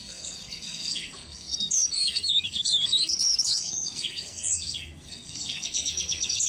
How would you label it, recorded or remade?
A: remade